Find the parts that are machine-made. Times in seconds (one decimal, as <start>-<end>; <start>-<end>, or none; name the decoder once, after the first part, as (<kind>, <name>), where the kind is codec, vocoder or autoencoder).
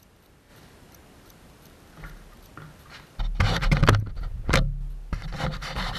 none